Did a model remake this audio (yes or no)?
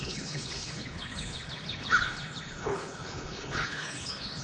yes